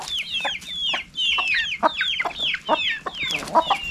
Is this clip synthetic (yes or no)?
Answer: no